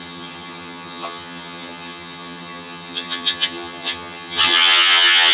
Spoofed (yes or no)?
yes